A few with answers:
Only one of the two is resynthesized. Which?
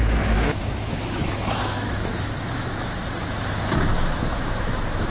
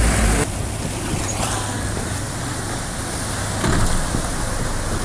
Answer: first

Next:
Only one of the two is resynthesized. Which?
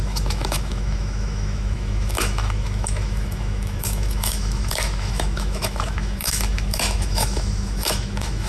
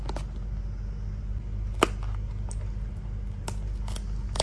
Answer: first